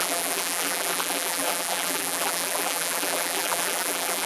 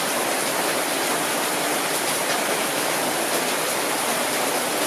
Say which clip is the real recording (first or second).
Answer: second